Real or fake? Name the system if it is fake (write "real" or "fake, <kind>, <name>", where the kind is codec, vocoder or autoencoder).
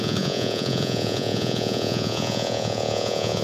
fake, vocoder, Vocos